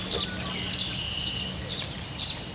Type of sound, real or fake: real